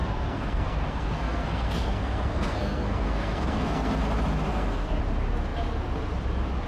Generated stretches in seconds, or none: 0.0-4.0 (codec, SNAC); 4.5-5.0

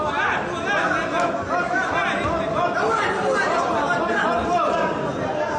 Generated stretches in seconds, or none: none

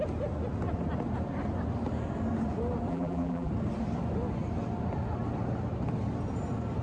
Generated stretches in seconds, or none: 2.9-3.5 (vocoder, BigVGAN v2)

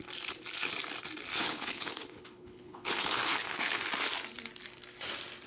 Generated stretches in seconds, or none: 1.3-3.8 (codec, HILCodec)